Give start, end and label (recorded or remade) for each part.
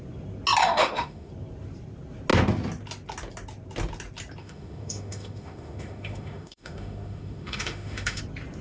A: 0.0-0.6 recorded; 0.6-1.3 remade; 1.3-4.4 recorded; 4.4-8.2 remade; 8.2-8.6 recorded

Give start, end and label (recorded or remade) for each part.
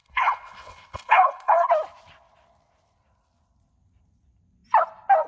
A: 0.0-1.7 remade; 1.7-5.3 recorded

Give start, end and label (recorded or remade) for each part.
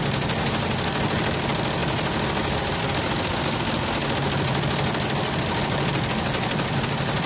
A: 0.0-7.3 recorded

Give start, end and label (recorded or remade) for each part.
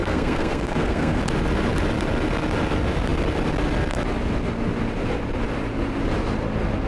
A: 0.0-1.2 remade; 1.2-6.9 recorded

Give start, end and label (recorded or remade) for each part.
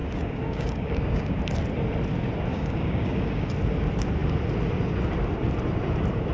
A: 0.0-1.4 remade; 1.4-2.5 recorded; 2.5-3.5 remade; 3.5-6.3 recorded